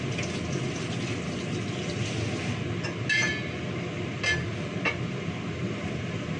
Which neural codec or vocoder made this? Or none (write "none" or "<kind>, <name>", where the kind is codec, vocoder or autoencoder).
none